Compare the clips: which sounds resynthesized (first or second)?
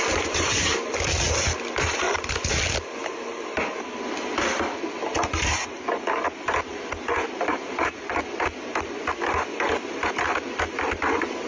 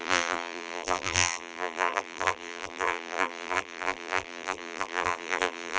second